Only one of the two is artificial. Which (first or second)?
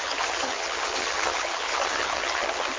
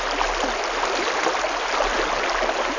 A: first